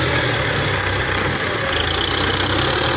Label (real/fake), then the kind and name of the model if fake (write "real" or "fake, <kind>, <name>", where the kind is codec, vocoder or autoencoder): real